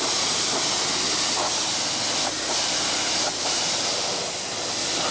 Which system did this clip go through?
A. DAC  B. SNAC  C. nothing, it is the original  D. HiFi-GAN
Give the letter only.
C